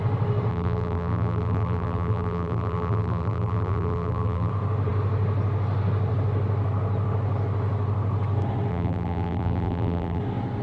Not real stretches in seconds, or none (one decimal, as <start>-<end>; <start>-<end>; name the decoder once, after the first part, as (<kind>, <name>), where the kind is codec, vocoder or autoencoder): 0.5-4.5 (vocoder, BigVGAN v2); 8.7-10.2